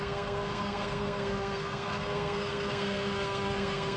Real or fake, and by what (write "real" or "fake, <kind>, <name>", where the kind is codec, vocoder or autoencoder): fake, codec, SNAC